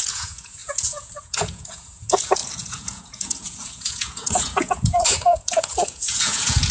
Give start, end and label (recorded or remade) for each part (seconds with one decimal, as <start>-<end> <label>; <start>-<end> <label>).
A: 0.0-6.7 remade